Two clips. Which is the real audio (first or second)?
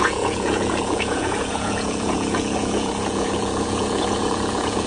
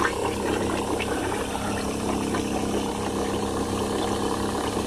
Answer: second